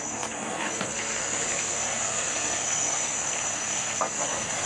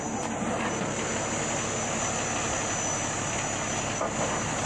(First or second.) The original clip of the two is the second